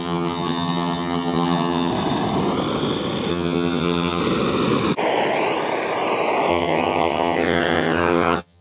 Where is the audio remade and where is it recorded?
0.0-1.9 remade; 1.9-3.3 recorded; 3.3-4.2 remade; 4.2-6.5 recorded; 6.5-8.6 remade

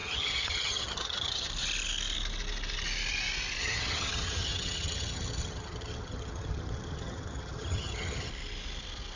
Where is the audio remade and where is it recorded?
0.0-1.5 remade; 1.5-3.6 recorded; 3.6-8.3 remade; 8.3-9.2 recorded

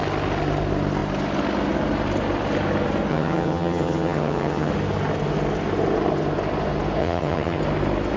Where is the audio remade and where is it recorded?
0.0-3.1 recorded; 3.1-4.7 remade; 4.7-7.0 recorded; 7.0-7.6 remade; 7.6-8.2 recorded

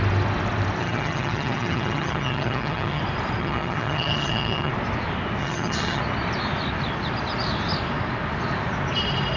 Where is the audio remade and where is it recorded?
0.0-0.8 recorded; 0.8-3.0 remade; 3.0-3.4 recorded; 3.4-4.7 remade; 4.7-5.4 recorded; 5.4-6.0 remade; 6.0-9.4 recorded

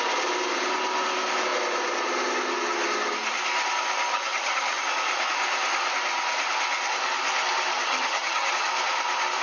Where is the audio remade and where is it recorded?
0.0-4.1 recorded; 4.1-4.8 remade; 4.8-7.7 recorded; 7.7-8.5 remade; 8.5-9.4 recorded

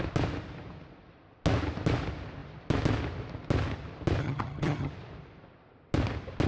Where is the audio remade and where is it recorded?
0.0-4.2 recorded; 4.2-4.9 remade; 4.9-6.5 recorded

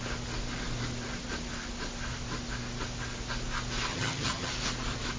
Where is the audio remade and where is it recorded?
0.0-3.9 recorded; 3.9-4.5 remade; 4.5-5.2 recorded